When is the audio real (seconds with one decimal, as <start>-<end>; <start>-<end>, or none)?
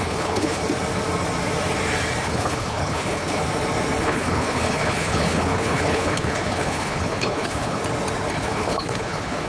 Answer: 0.6-2.2; 3.4-4.0; 7.8-8.3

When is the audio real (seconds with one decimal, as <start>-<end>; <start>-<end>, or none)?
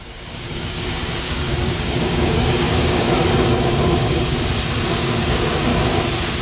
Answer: 3.2-4.9; 5.7-6.4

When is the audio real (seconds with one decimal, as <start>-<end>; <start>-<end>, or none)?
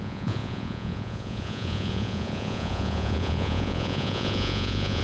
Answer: none